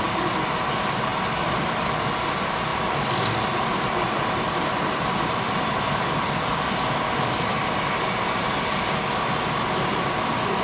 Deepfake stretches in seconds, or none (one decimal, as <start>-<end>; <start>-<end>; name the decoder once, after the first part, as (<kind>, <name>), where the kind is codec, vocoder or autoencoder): 1.1-1.8 (vocoder, BigVGAN v2); 2.7-7.8